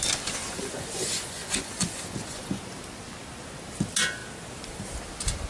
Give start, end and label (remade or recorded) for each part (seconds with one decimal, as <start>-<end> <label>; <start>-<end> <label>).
0.0-0.4 recorded; 0.4-2.6 remade; 2.6-5.5 recorded